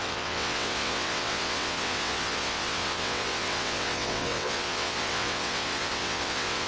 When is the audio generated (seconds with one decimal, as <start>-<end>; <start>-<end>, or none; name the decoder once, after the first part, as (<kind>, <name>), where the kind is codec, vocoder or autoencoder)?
0.0-6.7 (vocoder, WaveNeXt)